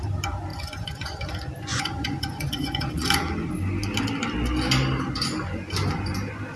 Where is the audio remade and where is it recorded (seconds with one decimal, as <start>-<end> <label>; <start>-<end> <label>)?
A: 0.0-0.5 recorded; 0.5-1.2 remade; 1.2-1.7 recorded; 1.7-3.1 remade; 3.1-6.6 recorded